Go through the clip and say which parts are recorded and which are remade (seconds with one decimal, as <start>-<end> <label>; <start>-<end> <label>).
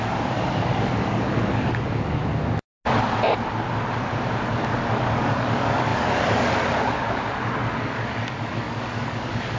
0.0-2.2 remade; 2.2-4.5 recorded; 4.5-9.6 remade